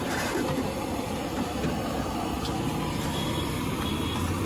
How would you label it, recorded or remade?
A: recorded